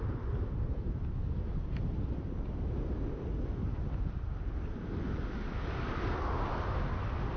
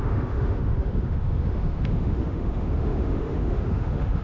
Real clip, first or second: first